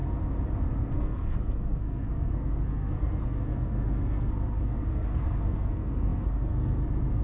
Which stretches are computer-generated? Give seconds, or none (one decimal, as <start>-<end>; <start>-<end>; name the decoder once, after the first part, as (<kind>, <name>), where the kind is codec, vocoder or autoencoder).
0.8-7.2 (codec, SNAC)